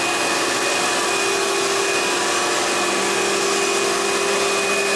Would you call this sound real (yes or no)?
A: yes